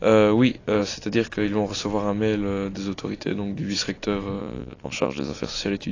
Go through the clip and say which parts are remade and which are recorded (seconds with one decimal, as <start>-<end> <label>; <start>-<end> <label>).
0.0-4.4 recorded; 4.4-5.5 remade; 5.5-5.9 recorded